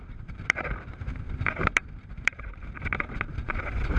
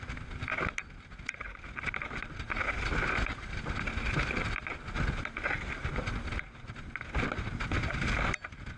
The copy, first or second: first